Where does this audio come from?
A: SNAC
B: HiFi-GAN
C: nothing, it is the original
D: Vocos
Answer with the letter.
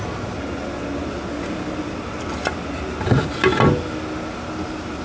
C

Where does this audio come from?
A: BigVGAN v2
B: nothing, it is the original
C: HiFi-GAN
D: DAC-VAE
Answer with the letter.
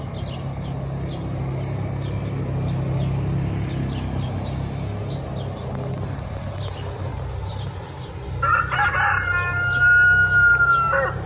B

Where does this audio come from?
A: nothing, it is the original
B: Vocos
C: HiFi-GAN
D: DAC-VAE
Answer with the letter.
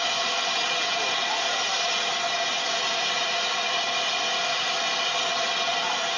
A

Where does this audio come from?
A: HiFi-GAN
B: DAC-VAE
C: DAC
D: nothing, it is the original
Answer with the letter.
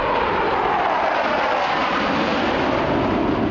D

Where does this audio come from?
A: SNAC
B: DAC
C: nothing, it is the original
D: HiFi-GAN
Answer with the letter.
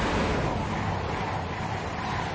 C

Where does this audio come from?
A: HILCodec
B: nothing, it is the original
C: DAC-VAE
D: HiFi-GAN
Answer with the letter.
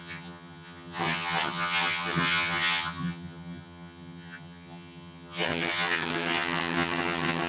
D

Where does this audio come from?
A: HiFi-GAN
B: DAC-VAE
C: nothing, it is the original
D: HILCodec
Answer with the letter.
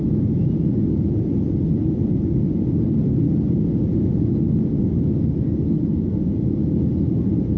C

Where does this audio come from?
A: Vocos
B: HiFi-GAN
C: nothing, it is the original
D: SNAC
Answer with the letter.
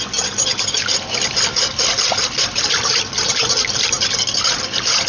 C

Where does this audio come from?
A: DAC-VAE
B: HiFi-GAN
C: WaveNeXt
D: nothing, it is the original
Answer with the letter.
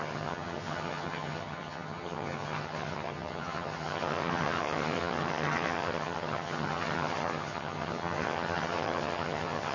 B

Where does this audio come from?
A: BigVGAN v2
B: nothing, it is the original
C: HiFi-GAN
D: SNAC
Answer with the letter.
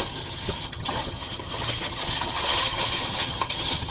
C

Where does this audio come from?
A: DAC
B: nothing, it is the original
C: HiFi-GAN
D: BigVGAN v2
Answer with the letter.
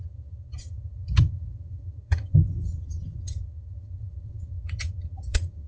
C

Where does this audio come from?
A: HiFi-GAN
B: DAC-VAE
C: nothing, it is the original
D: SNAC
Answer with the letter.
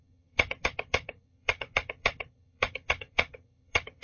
A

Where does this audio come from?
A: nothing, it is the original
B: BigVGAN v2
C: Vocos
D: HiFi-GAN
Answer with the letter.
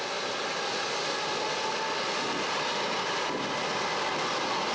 A